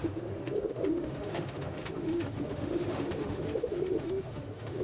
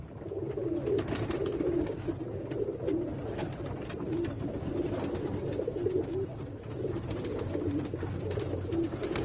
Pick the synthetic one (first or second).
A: first